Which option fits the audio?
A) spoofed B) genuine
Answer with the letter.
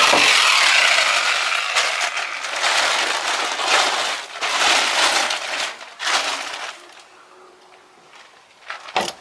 B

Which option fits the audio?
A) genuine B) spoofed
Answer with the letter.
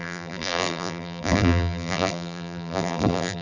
B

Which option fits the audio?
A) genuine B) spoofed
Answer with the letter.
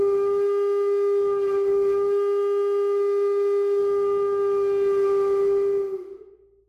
A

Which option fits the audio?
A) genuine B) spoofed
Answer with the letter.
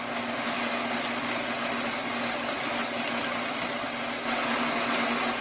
A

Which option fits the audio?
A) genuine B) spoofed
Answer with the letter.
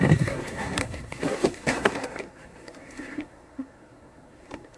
B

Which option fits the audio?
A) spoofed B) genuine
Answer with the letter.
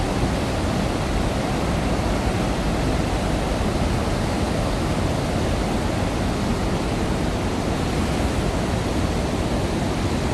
B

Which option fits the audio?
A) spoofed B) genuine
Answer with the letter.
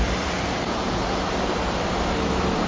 A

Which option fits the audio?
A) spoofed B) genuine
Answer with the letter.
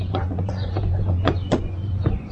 A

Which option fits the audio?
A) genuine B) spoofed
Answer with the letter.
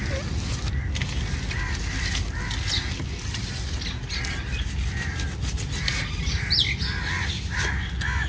A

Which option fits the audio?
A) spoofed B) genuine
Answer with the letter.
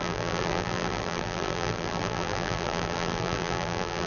A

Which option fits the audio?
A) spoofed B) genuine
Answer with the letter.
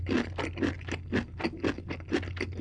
B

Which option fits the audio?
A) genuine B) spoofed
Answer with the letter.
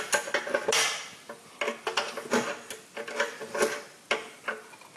A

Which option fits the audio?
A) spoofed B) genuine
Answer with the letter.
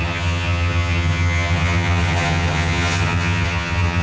A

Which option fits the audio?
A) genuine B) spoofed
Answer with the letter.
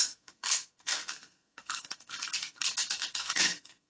B